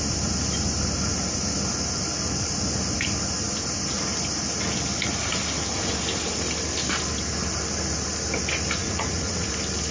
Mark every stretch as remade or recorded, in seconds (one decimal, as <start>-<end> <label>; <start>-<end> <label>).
0.0-8.8 recorded; 8.8-9.5 remade; 9.5-9.9 recorded

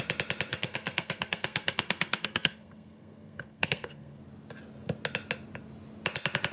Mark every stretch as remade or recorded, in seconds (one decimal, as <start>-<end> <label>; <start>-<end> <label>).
0.0-0.5 recorded; 0.5-4.2 remade; 4.2-6.5 recorded

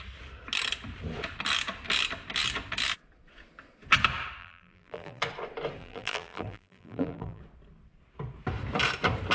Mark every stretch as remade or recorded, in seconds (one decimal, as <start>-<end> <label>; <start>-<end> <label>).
0.0-4.4 recorded; 4.4-5.2 remade; 5.2-5.8 recorded; 5.8-7.4 remade; 7.4-9.3 recorded

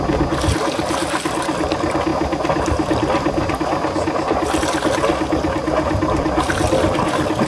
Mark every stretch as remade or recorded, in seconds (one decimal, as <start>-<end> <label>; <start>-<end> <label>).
0.0-7.5 recorded

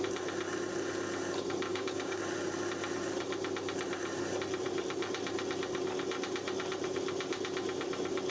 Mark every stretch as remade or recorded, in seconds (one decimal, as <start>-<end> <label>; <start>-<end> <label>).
0.0-1.7 recorded; 1.7-2.2 remade; 2.2-8.3 recorded

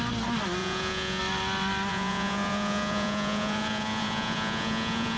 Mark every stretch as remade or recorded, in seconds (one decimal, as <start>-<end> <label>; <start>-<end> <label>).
0.0-0.6 recorded; 0.6-1.2 remade; 1.2-1.9 recorded; 1.9-5.2 remade

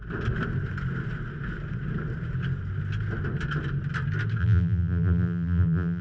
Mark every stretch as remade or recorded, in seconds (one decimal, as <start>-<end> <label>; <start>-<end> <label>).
0.0-4.4 recorded; 4.4-6.0 remade